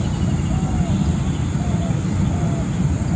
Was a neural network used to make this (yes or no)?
no